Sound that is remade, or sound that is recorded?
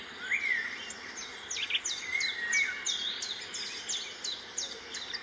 recorded